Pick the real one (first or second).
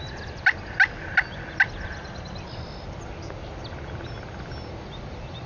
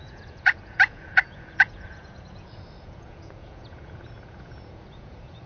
first